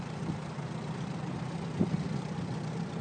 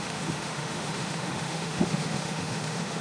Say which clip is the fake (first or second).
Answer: second